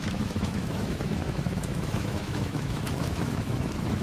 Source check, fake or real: fake